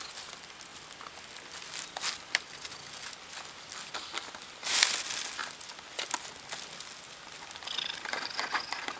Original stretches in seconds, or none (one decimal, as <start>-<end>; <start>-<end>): 0.0-9.0